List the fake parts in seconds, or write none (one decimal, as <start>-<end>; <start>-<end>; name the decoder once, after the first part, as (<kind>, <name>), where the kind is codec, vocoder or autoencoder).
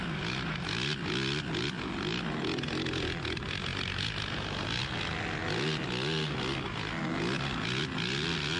none